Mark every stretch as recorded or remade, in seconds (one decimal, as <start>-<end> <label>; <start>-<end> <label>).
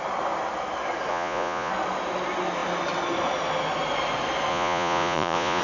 0.0-1.1 recorded; 1.1-1.7 remade; 1.7-4.5 recorded; 4.5-5.6 remade